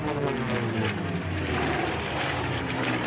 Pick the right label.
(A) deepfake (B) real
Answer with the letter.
A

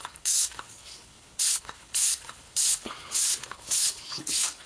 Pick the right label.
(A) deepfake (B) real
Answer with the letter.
A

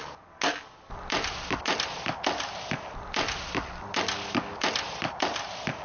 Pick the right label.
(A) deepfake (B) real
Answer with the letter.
B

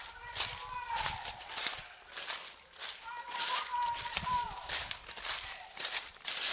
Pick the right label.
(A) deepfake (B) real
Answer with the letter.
B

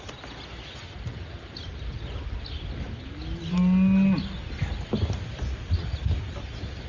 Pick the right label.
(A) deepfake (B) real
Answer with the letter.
B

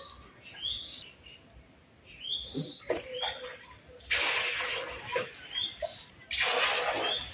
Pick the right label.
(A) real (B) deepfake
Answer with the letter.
A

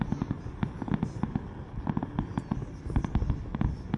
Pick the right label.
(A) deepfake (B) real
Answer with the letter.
B